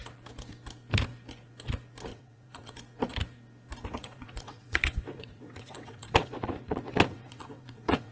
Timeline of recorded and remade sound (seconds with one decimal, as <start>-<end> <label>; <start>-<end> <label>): 0.0-2.1 recorded; 2.1-2.7 remade; 2.7-4.0 recorded; 4.0-8.1 remade